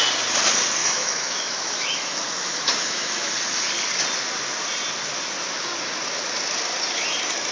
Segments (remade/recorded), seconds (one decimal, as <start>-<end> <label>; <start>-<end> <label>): 0.0-0.8 recorded; 0.8-3.3 remade; 3.3-7.5 recorded